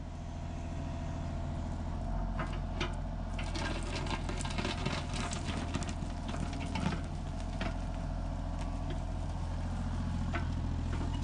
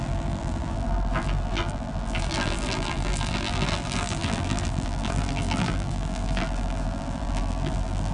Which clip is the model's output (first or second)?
second